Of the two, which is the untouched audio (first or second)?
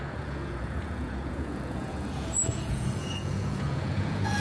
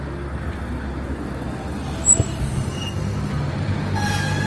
second